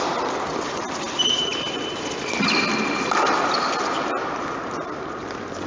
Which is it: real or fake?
real